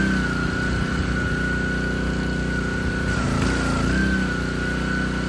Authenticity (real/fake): real